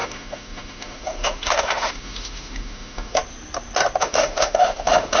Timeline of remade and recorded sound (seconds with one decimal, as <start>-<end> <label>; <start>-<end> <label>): 0.0-3.2 remade; 3.2-4.0 recorded; 4.0-5.2 remade